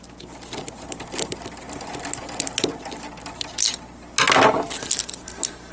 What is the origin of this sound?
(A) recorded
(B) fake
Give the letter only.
A